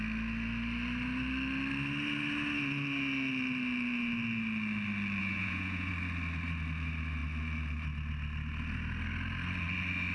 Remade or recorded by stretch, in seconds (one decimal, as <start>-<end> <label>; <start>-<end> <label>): 0.0-5.2 recorded; 5.2-5.9 remade; 5.9-10.1 recorded